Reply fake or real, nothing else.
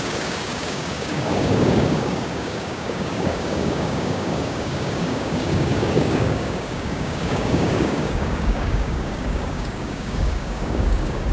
fake